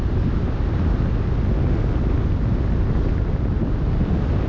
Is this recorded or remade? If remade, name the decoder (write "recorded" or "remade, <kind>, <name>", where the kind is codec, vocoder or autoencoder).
recorded